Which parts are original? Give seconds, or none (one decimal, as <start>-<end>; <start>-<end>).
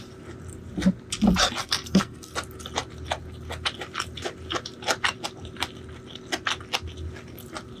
0.0-1.6; 2.3-7.8